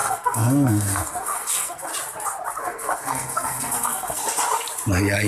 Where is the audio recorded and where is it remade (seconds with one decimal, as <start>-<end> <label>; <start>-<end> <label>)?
0.0-1.9 remade; 1.9-2.6 recorded; 2.6-4.2 remade; 4.2-5.3 recorded

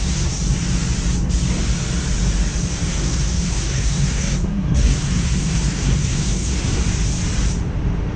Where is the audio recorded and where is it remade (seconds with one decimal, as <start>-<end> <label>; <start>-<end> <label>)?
0.0-0.4 remade; 0.4-2.9 recorded; 2.9-6.8 remade; 6.8-8.2 recorded

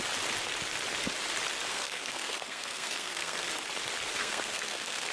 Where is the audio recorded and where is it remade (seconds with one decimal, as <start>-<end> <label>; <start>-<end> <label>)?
0.0-1.7 recorded; 1.7-3.5 remade; 3.5-4.2 recorded; 4.2-5.1 remade